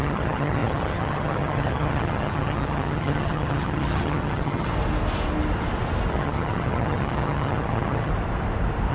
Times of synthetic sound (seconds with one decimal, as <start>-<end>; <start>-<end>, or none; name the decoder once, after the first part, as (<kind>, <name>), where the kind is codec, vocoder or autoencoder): 0.0-4.7 (vocoder, HiFi-GAN); 6.1-8.1